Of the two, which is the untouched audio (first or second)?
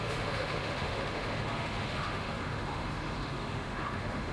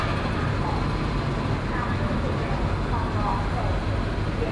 second